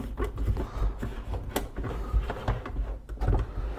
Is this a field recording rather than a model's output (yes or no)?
yes